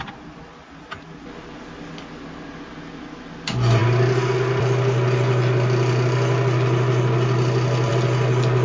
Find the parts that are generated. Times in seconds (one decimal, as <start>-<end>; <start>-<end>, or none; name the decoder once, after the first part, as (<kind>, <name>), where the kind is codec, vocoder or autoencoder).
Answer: none